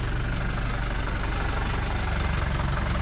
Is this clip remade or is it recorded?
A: recorded